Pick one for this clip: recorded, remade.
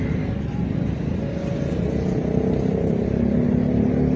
recorded